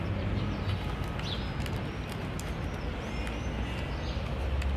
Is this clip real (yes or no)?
yes